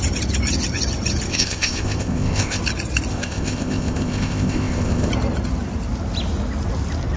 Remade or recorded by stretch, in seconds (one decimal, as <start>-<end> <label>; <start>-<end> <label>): 0.0-1.3 recorded; 1.3-2.6 remade; 2.6-3.1 recorded; 3.1-5.1 remade; 5.1-7.2 recorded